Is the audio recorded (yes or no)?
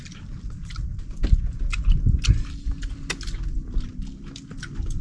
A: yes